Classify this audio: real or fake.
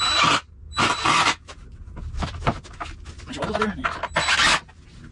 real